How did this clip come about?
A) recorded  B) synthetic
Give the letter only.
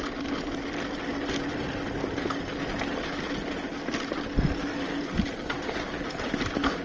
A